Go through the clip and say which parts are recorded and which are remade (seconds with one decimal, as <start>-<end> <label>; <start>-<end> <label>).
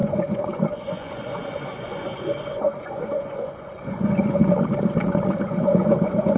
0.0-4.4 remade; 4.4-5.4 recorded; 5.4-6.4 remade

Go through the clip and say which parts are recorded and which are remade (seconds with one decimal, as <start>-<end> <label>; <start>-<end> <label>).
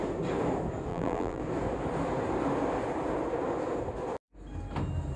0.0-0.9 recorded; 0.9-1.4 remade; 1.4-5.2 recorded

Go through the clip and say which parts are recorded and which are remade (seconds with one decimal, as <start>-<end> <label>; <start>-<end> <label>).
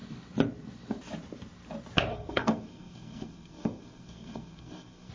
0.0-2.1 recorded; 2.1-5.1 remade